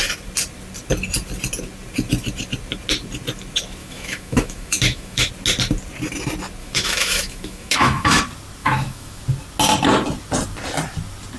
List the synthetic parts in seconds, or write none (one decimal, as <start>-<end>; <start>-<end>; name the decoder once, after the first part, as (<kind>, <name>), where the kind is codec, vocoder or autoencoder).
3.8-5.3 (autoencoder, DAC-VAE); 6.6-8.2; 8.6-9.2